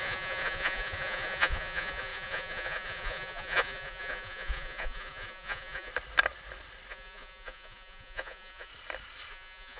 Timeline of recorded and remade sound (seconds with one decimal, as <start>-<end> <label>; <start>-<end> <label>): 0.0-5.9 remade; 5.9-6.9 recorded; 6.9-8.7 remade; 8.7-9.3 recorded; 9.3-9.8 remade